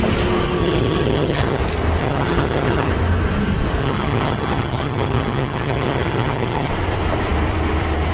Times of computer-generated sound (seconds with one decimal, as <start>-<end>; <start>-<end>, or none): 0.6-1.6; 2.0-2.9; 3.8-6.7